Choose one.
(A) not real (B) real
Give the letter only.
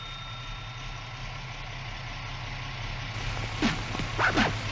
B